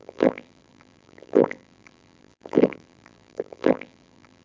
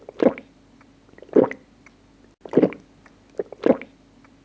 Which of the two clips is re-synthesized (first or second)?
first